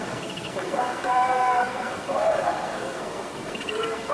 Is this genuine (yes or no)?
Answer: no